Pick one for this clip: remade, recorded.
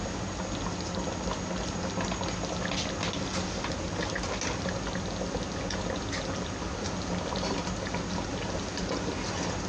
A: recorded